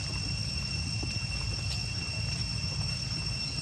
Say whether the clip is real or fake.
real